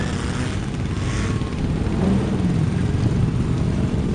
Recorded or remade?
recorded